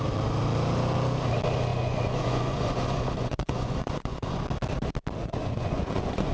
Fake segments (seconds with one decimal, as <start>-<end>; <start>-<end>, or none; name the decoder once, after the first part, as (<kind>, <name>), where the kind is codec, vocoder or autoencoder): 1.7-4.4 (vocoder, Vocos); 5.2-6.3